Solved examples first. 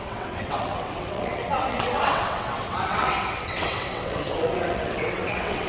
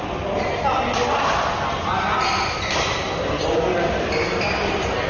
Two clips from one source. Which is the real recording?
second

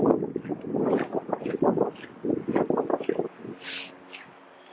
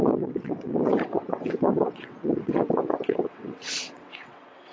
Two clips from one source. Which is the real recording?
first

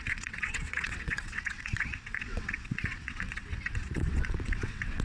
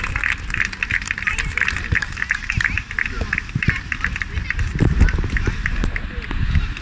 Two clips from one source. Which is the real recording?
second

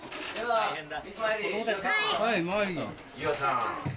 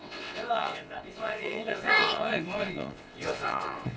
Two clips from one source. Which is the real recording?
first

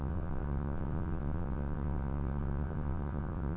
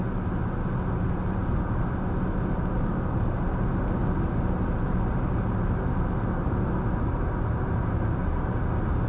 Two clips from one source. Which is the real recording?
second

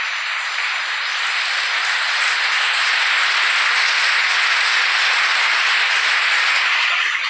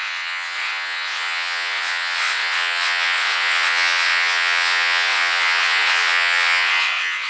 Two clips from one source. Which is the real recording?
first